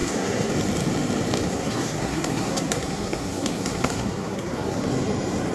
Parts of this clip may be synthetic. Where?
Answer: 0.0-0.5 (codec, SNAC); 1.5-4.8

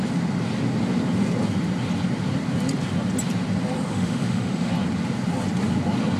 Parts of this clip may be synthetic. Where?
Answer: 3.9-4.7 (autoencoder, DAC-VAE)

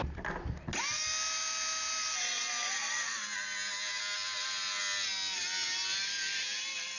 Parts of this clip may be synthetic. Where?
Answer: none

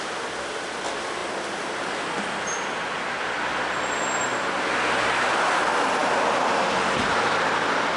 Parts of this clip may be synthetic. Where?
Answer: none

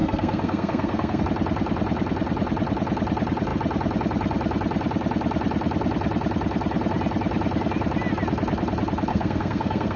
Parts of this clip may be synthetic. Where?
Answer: 0.0-1.2 (codec, SNAC); 9.1-10.0

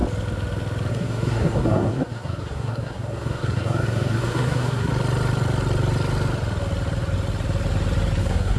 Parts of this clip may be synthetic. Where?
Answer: 0.9-4.9 (codec, SNAC); 8.2-8.6

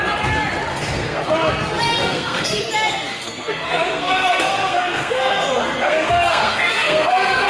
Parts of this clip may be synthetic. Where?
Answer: 0.7-1.2 (codec, SNAC); 2.0-2.6; 3.1-7.5

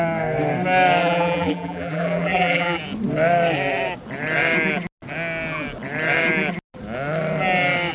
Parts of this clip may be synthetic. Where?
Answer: 1.0-2.8 (vocoder, BigVGAN v2)